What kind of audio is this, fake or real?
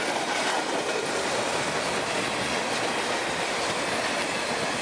real